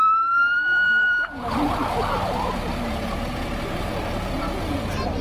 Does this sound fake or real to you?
fake